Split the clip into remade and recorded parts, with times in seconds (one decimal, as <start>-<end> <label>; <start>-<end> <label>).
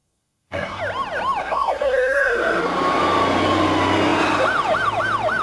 0.0-0.8 remade; 0.8-1.4 recorded; 1.4-2.6 remade; 2.6-5.4 recorded